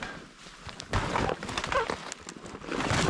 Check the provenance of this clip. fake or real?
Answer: real